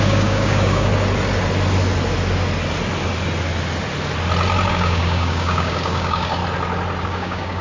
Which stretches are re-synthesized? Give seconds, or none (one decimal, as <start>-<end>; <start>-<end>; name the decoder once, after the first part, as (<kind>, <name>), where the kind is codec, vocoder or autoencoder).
0.0-0.9 (codec, DAC); 4.7-6.4; 7.0-7.6